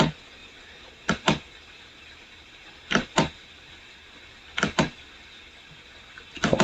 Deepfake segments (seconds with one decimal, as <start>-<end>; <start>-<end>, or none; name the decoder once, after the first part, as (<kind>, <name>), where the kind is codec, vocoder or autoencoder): 0.4-4.4 (vocoder, BigVGAN v2)